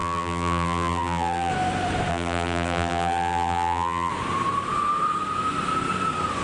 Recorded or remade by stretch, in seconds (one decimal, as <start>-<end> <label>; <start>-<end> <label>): 0.0-1.5 remade; 1.5-2.1 recorded; 2.1-4.1 remade; 4.1-6.4 recorded

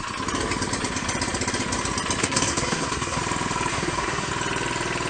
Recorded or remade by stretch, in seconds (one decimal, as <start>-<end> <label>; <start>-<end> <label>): 0.0-2.2 recorded; 2.2-3.2 remade; 3.2-3.7 recorded; 3.7-4.3 remade; 4.3-5.1 recorded

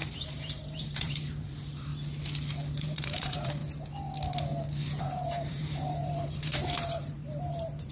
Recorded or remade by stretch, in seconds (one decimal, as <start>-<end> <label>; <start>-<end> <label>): 0.0-1.9 remade; 1.9-2.6 recorded; 2.6-3.6 remade; 3.6-5.0 recorded; 5.0-7.9 remade

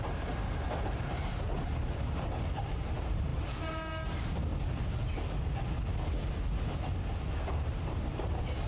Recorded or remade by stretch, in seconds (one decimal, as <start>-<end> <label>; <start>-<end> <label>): 0.0-4.5 remade; 4.5-7.4 recorded; 7.4-8.7 remade

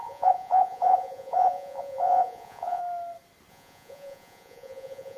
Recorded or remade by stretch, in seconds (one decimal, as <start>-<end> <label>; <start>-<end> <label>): 0.0-2.8 remade; 2.8-3.5 recorded; 3.5-5.2 remade

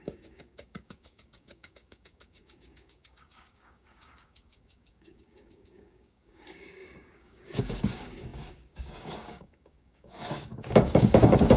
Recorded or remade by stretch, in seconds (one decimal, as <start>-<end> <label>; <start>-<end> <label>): 0.0-11.6 remade